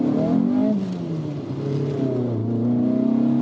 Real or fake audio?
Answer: real